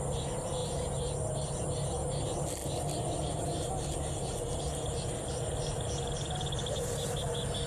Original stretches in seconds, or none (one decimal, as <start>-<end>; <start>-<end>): 0.0-2.6; 3.7-7.7